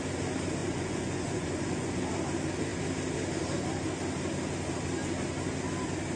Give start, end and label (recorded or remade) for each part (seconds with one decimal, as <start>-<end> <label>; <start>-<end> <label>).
0.0-0.6 recorded; 0.6-2.0 remade; 2.0-6.2 recorded